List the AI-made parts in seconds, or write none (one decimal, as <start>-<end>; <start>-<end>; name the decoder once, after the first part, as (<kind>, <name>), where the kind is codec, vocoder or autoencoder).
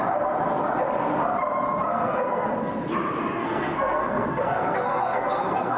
1.9-2.5 (codec, SNAC); 3.4-5.8